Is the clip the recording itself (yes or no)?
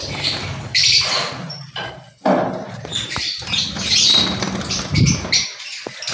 yes